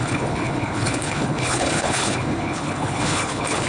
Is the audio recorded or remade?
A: remade